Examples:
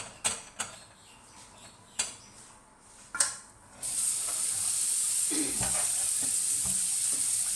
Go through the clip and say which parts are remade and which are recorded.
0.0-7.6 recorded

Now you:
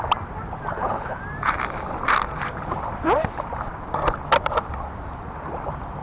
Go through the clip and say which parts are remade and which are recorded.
0.0-0.7 recorded; 0.7-1.2 remade; 1.2-6.0 recorded

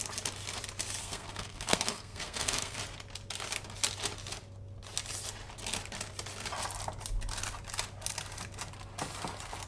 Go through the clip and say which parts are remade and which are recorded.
0.0-1.0 recorded; 1.0-2.8 remade; 2.8-9.7 recorded